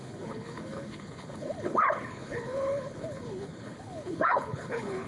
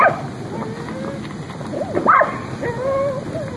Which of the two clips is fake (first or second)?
first